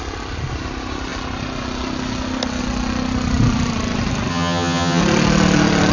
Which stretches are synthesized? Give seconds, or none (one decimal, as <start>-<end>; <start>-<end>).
4.3-5.0